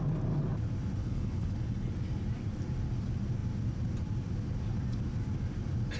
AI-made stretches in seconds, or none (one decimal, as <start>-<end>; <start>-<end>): 1.0-1.9